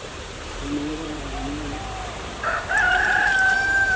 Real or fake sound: fake